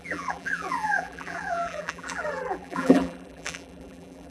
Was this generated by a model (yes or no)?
yes